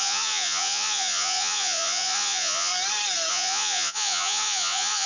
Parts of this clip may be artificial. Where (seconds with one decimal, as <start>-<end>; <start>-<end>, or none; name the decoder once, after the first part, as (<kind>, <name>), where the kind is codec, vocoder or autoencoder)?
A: 0.0-2.7 (vocoder, Vocos); 3.3-5.1